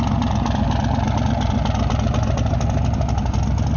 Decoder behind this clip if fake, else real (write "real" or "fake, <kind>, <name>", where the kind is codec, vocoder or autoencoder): real